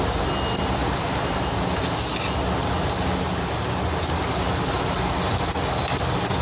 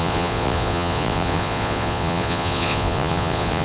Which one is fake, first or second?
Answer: second